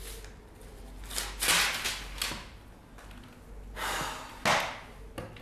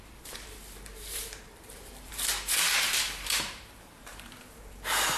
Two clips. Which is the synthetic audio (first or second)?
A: second